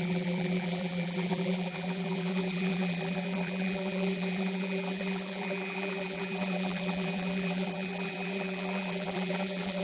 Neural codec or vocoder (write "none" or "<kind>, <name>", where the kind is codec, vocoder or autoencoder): vocoder, BigVGAN v2